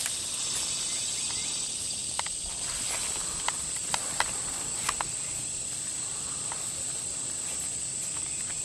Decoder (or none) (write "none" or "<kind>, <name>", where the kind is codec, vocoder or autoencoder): none